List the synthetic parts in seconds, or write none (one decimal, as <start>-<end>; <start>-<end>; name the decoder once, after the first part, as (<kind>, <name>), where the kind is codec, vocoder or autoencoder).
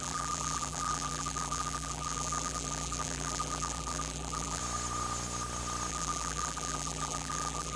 0.0-4.6 (vocoder, BigVGAN v2); 5.9-7.8